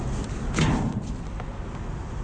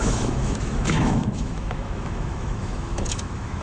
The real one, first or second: first